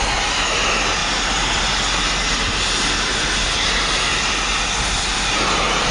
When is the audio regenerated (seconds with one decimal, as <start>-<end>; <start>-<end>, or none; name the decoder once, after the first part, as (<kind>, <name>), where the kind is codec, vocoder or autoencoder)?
none